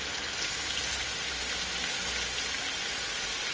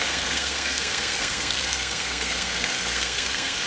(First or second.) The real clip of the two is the first